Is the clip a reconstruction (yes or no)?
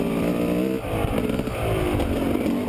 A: no